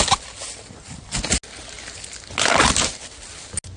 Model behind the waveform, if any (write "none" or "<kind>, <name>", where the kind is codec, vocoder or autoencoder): none